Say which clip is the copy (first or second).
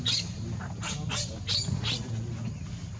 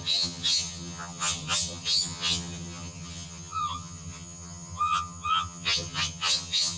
second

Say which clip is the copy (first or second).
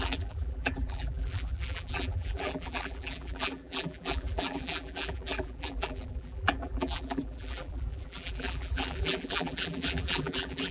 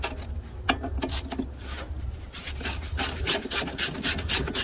first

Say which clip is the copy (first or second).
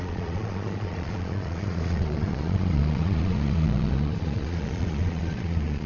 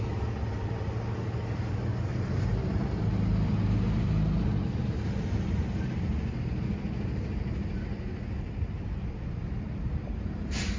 first